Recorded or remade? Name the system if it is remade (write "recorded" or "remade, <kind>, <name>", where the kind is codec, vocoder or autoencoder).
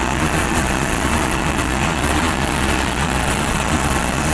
remade, vocoder, Vocos